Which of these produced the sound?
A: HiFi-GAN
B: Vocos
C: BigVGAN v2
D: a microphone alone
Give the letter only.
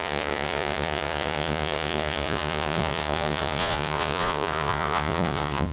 B